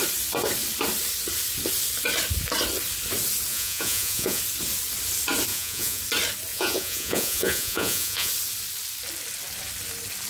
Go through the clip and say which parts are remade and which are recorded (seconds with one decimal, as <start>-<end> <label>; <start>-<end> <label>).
0.0-3.5 recorded; 3.5-4.4 remade; 4.4-5.5 recorded; 5.5-6.0 remade; 6.0-6.5 recorded; 6.5-8.3 remade; 8.3-10.3 recorded